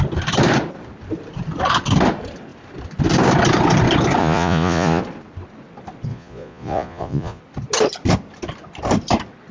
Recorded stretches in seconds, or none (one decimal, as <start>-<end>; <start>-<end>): 0.0-4.2; 5.0-6.1; 7.4-9.5